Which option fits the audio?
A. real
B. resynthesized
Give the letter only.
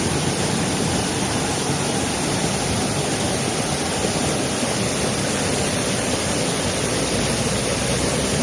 A